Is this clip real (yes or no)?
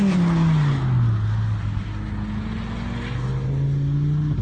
yes